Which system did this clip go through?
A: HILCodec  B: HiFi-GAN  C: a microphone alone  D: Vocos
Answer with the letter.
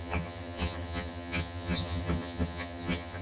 B